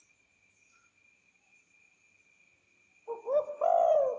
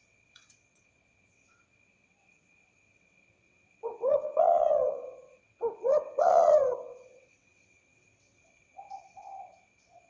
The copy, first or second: second